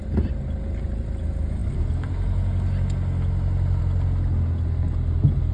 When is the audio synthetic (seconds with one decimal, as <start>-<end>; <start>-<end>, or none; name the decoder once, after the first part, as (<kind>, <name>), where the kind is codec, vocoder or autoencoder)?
none